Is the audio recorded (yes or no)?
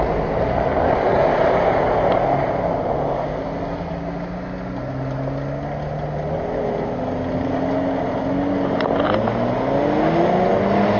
yes